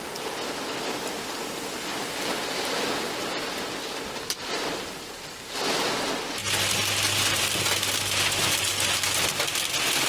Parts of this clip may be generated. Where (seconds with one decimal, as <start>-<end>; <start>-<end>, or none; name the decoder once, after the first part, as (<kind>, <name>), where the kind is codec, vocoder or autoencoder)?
none